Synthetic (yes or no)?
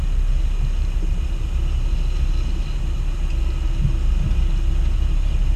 no